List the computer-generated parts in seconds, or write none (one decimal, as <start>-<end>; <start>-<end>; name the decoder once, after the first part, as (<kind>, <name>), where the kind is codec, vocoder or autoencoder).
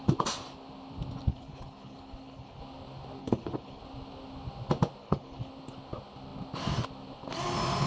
1.3-2.6 (codec, HILCodec); 3.2-3.8; 5.0-5.5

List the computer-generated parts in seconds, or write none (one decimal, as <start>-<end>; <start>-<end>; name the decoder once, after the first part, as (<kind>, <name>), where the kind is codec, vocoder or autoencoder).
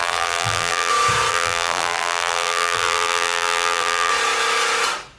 0.0-0.9 (vocoder, BigVGAN v2); 1.3-4.1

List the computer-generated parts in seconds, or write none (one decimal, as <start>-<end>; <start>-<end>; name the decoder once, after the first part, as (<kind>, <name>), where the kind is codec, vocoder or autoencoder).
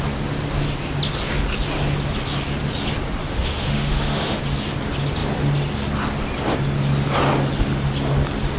3.2-4.4 (autoencoder, DAC-VAE)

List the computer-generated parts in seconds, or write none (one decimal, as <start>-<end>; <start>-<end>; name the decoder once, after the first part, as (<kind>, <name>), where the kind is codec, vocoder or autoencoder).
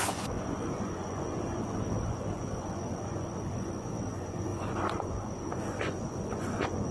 0.0-6.9 (vocoder, Vocos)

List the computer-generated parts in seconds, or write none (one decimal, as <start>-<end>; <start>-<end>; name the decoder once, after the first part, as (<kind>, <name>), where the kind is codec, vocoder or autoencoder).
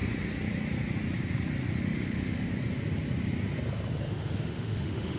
1.8-2.5 (autoencoder, DAC-VAE); 4.0-5.2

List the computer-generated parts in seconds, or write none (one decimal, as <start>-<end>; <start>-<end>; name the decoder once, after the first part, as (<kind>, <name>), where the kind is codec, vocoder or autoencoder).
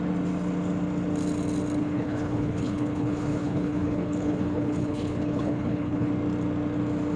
1.8-6.1 (codec, HILCodec)